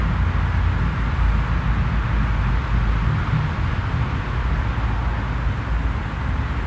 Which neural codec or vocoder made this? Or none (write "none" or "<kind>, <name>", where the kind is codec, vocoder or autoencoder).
none